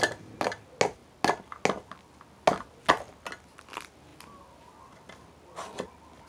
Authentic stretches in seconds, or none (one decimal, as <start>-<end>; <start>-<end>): 0.0-6.3